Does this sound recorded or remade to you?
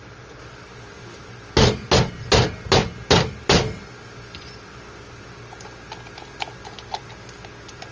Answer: recorded